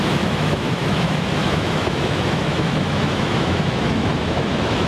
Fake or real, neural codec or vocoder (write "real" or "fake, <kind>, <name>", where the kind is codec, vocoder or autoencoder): fake, autoencoder, DAC-VAE